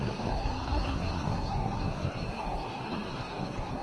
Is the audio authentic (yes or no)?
no